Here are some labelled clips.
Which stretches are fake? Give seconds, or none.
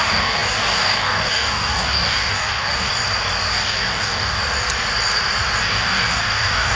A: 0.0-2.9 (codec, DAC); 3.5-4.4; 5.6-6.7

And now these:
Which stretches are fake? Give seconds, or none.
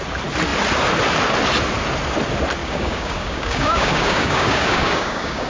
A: 2.6-5.5 (codec, DAC)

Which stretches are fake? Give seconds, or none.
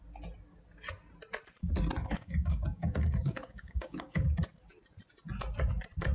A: 2.0-4.2 (codec, DAC)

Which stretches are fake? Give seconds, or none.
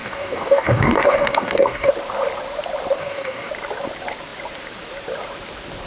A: 0.0-1.9 (codec, DAC); 3.0-3.5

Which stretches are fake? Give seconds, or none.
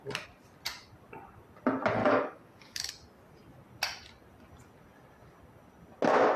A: 2.0-2.9 (codec, DAC)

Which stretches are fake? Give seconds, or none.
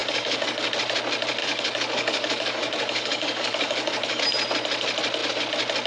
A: 0.0-0.7 (codec, DAC); 1.4-4.2